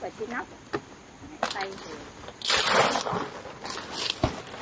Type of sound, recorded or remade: recorded